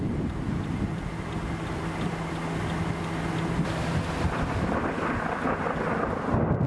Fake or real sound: real